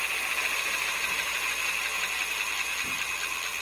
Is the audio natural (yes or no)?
no